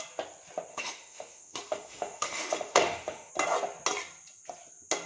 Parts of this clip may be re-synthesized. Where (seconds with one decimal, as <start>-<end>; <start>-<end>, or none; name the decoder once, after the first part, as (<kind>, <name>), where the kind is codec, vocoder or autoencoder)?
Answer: 0.7-3.3 (autoencoder, DAC-VAE)